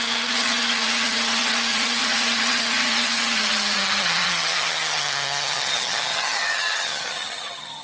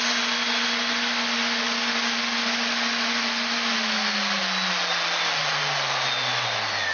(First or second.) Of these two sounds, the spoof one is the first